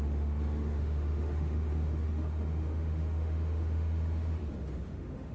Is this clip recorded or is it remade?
remade